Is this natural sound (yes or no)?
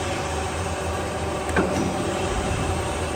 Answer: no